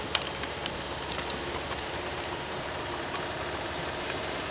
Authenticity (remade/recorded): remade